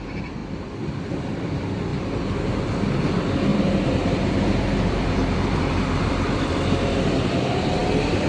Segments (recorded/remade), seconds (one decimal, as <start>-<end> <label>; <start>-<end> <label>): 0.0-0.4 recorded; 0.4-1.0 remade; 1.0-1.9 recorded; 1.9-2.8 remade; 2.8-3.5 recorded; 3.5-6.9 remade; 6.9-8.3 recorded